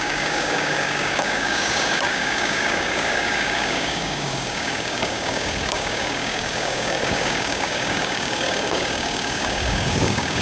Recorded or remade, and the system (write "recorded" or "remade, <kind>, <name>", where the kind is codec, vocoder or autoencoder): remade, codec, DAC